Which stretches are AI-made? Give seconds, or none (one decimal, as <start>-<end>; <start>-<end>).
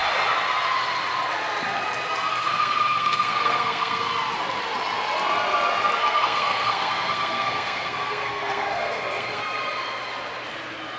2.3-4.1; 6.0-9.4